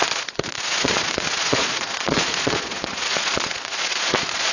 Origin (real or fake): fake